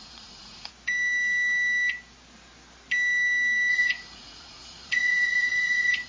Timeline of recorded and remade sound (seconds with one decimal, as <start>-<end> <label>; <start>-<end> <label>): 0.0-0.7 remade; 0.7-3.7 recorded; 3.7-6.1 remade